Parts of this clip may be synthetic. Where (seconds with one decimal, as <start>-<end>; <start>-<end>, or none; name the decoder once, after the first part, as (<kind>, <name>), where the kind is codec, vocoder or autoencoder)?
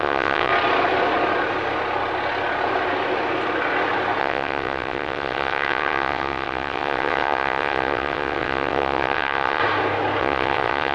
0.0-0.5 (vocoder, WaveNeXt); 4.2-9.6; 10.2-10.9